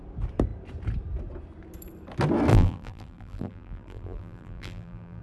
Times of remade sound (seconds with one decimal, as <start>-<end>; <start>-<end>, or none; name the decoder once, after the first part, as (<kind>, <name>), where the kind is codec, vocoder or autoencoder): 2.5-5.2 (vocoder, BigVGAN v2)